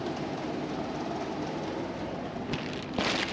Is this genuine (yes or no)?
yes